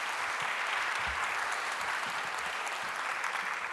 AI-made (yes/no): yes